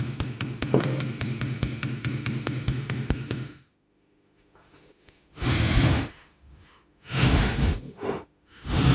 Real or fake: fake